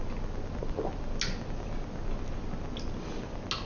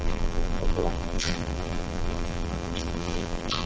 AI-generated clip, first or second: second